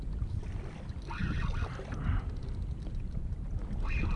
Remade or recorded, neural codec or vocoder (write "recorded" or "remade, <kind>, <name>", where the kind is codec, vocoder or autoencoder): remade, vocoder, BigVGAN v2